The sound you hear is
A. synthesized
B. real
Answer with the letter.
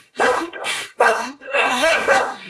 A